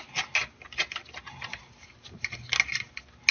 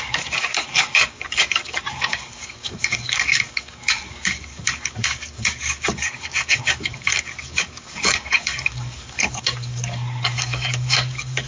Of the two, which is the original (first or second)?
first